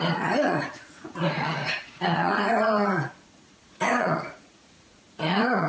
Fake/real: fake